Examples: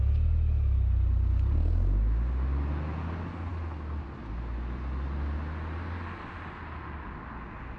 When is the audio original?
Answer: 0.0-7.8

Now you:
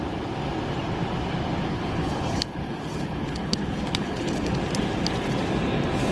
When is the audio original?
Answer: 0.0-1.7; 4.6-6.1

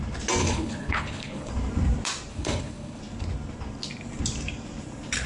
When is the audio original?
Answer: 0.0-0.4; 1.5-2.3; 3.0-5.3

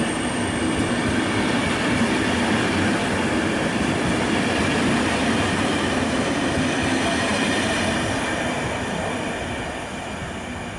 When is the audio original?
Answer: 0.0-10.8

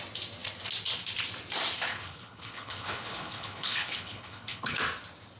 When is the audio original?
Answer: 0.0-1.9; 4.8-5.4

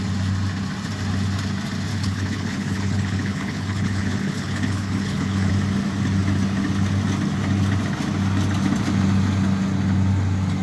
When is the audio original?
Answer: 0.0-1.9; 5.5-10.6

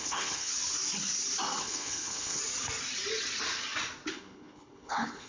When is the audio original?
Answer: 0.5-1.6; 2.4-4.1